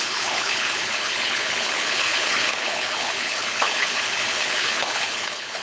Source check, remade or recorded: remade